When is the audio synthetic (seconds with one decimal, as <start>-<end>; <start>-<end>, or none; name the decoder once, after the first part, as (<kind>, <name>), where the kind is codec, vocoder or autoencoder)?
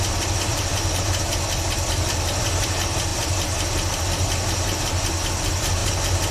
none